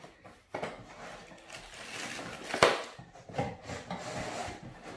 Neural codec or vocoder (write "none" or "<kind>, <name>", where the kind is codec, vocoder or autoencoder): none